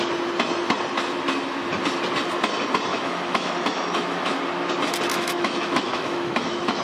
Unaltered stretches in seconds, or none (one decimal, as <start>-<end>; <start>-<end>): 0.0-2.9; 4.4-5.1

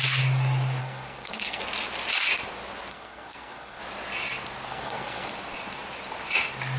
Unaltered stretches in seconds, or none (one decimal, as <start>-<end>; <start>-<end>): 0.0-0.8; 1.6-2.9; 3.8-4.7; 5.3-6.8

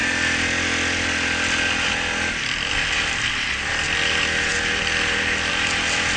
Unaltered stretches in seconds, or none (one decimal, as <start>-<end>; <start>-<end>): 0.0-6.2

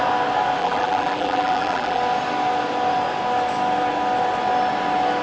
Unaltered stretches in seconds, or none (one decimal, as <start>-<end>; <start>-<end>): 0.0-0.6; 2.0-5.2